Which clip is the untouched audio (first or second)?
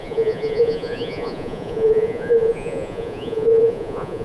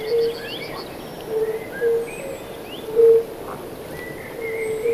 second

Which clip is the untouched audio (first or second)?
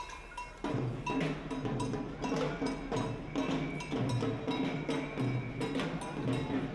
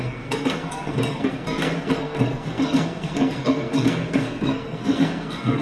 first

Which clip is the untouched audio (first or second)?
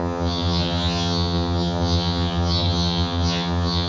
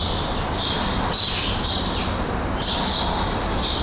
second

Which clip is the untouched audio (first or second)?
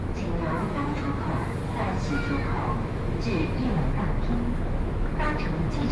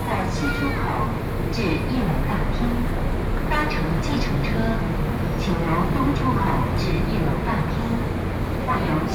second